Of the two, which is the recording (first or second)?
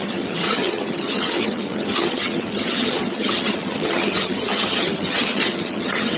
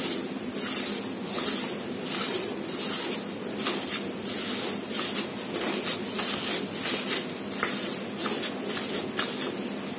second